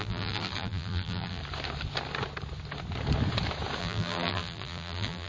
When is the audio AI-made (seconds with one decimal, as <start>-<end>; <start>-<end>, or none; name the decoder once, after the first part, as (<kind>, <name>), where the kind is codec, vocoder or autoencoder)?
0.0-1.4 (vocoder, BigVGAN v2); 3.8-5.3